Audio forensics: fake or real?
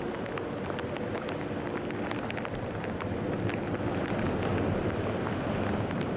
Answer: real